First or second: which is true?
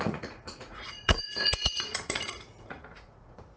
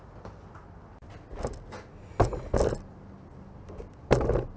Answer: second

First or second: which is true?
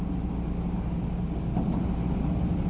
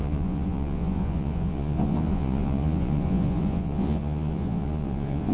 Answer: first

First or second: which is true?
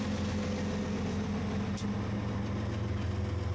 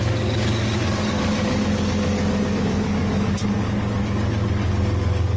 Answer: first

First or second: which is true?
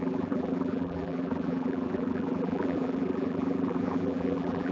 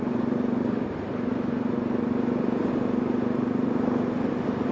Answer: second